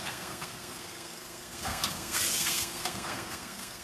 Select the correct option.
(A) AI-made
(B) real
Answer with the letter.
A